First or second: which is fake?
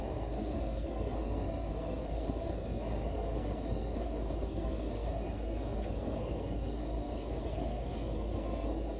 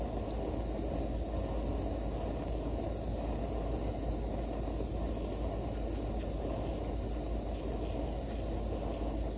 first